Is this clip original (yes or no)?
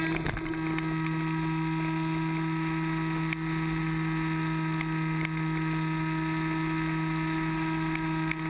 yes